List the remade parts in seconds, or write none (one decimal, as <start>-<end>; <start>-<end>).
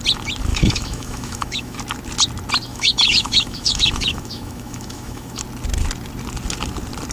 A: 0.5-1.8; 2.7-5.4